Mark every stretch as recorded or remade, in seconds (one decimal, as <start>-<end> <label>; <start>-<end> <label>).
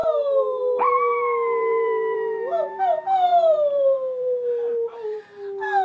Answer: 0.0-2.8 remade; 2.8-3.3 recorded; 3.3-5.2 remade; 5.2-5.8 recorded